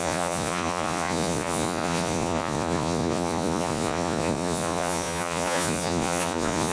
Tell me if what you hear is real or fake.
fake